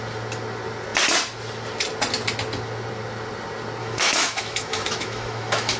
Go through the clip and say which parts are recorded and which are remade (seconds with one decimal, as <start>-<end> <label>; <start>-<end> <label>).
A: 0.0-3.8 recorded; 3.8-5.8 remade